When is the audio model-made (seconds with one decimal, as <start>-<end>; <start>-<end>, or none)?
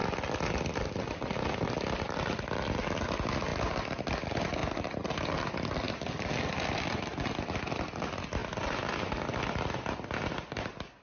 none